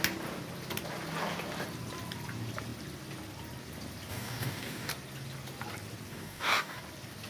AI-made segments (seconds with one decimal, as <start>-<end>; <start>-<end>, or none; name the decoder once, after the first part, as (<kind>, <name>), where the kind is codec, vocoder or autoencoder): 4.1-4.9 (codec, DAC); 6.1-6.8